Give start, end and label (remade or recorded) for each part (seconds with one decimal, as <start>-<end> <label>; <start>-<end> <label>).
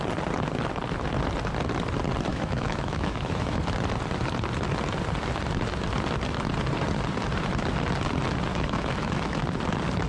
0.0-2.3 recorded; 2.3-3.6 remade; 3.6-8.5 recorded; 8.5-9.4 remade; 9.4-10.1 recorded